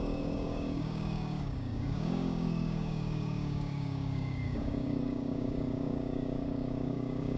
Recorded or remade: remade